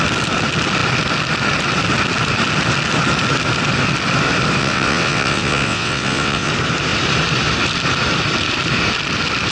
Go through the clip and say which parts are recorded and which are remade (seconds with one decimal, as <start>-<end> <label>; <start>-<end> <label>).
0.0-4.6 recorded; 4.6-6.5 remade; 6.5-9.5 recorded